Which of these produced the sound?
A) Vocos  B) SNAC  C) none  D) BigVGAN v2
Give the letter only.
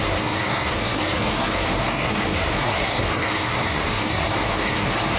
B